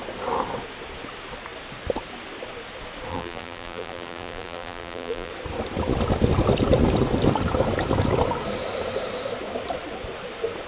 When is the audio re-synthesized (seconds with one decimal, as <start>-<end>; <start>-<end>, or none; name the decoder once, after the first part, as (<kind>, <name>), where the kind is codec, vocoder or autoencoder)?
3.1-5.3 (vocoder, BigVGAN v2)